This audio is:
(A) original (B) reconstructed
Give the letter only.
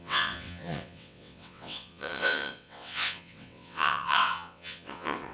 B